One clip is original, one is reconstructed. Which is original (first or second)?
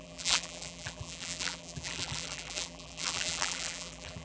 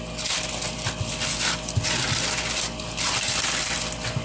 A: second